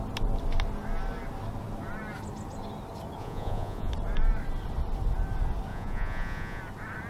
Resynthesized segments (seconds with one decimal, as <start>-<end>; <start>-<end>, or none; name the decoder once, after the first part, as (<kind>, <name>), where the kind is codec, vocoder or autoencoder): 3.2-3.9 (vocoder, Vocos); 5.7-6.6